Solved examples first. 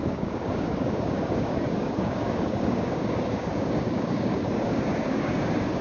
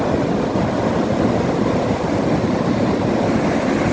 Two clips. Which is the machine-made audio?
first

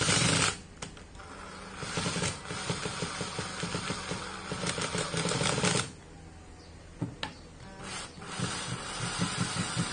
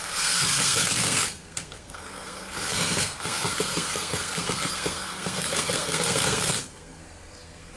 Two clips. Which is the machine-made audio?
second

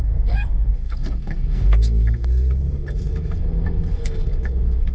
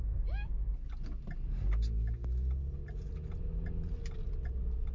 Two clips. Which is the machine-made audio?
first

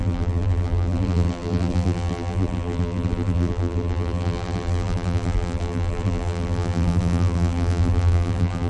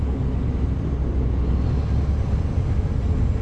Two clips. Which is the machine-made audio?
first